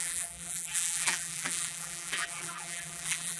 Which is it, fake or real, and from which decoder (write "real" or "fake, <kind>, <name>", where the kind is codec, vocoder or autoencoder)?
fake, vocoder, BigVGAN v2